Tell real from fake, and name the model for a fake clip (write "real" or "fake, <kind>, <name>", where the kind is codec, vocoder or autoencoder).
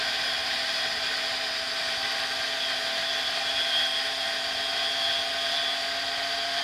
real